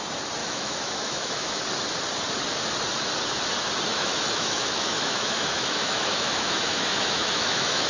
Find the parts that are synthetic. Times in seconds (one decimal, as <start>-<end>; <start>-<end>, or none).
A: 0.4-1.6; 3.9-7.9